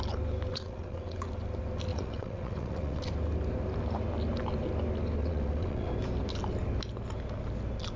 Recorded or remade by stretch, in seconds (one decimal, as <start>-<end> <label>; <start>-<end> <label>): 0.0-0.5 recorded; 0.5-1.3 remade; 1.3-1.9 recorded; 1.9-3.0 remade; 3.0-5.2 recorded; 5.2-5.9 remade; 5.9-8.0 recorded